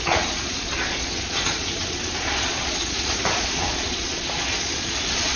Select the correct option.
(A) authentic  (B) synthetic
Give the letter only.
B